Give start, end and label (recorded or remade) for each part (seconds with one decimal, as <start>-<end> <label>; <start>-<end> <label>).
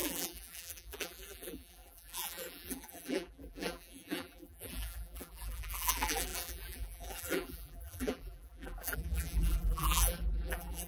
0.0-10.9 remade